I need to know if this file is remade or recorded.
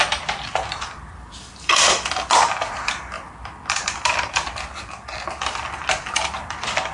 remade